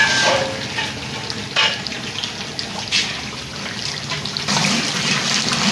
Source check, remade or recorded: recorded